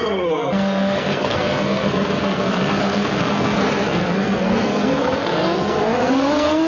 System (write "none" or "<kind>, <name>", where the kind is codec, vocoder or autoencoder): codec, SNAC